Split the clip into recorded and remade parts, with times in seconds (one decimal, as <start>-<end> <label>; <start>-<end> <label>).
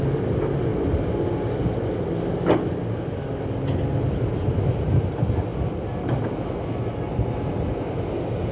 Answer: 0.0-8.5 recorded